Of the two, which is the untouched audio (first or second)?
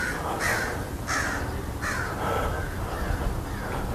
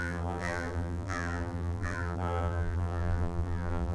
first